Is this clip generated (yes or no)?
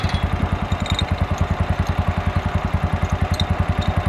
no